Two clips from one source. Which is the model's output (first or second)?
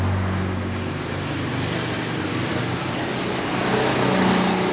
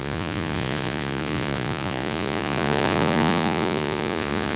second